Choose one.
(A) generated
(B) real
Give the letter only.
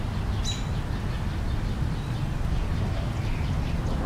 B